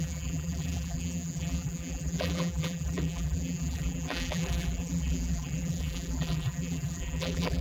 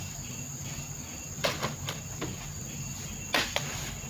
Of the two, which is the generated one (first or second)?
first